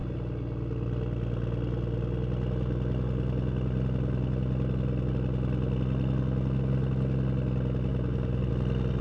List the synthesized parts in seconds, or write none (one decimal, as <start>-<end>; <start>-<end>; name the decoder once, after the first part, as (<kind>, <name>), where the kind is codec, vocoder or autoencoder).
7.9-8.5 (vocoder, BigVGAN v2)